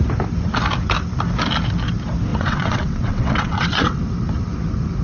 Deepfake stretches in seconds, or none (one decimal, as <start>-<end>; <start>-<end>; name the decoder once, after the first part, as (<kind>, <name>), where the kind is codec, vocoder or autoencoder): 2.3-4.0 (vocoder, WaveNeXt)